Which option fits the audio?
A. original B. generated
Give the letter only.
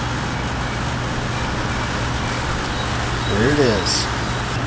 A